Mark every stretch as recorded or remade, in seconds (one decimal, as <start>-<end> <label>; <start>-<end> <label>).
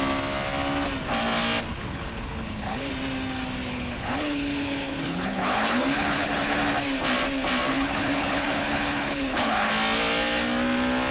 0.0-1.7 recorded; 1.7-2.9 remade; 2.9-3.7 recorded; 3.7-6.6 remade; 6.6-7.7 recorded; 7.7-9.7 remade; 9.7-11.1 recorded